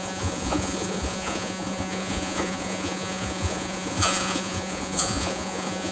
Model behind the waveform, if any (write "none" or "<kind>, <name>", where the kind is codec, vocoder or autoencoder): vocoder, Vocos